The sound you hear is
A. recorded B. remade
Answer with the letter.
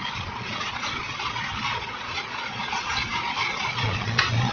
B